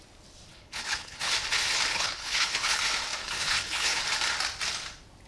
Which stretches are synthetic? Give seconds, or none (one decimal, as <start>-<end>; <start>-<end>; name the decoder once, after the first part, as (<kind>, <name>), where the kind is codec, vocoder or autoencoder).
0.5-1.3 (codec, HILCodec); 1.9-2.8; 3.2-4.0